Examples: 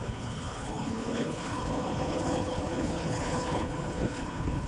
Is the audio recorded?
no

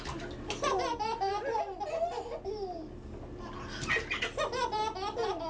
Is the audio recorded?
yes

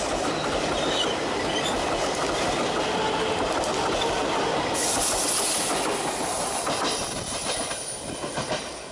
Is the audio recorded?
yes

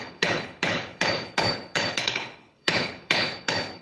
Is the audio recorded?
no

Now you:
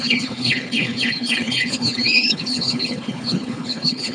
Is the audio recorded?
no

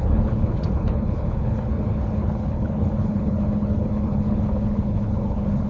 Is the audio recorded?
no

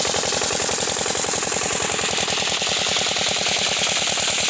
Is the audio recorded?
yes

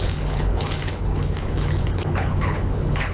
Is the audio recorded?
no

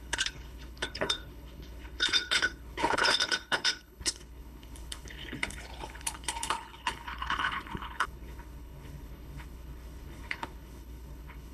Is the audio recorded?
no